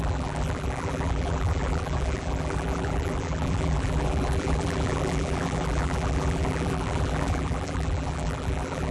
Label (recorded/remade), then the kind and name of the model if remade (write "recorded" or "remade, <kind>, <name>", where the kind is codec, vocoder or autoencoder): remade, vocoder, BigVGAN v2